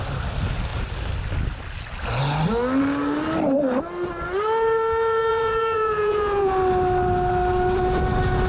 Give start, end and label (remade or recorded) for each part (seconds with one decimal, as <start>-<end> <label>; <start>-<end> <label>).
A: 0.0-5.3 recorded; 5.3-6.5 remade; 6.5-8.5 recorded